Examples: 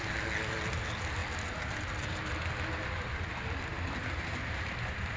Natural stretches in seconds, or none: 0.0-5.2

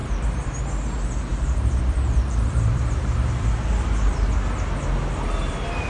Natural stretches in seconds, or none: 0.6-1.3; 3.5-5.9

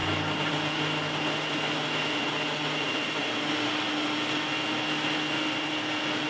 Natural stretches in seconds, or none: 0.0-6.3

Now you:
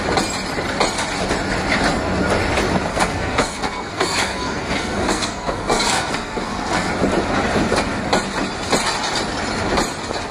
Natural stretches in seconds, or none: 0.0-2.9; 6.9-10.3

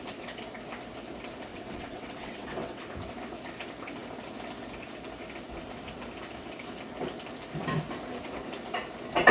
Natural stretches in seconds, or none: 0.0-1.5; 2.8-9.3